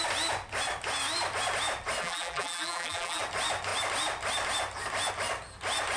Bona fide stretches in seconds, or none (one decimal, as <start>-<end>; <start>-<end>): 0.0-2.0; 3.2-6.0